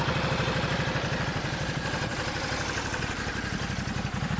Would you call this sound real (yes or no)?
yes